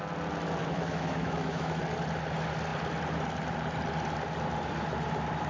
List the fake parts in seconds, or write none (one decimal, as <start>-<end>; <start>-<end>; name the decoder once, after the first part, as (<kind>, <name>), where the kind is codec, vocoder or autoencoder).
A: 0.6-1.8 (autoencoder, DAC-VAE)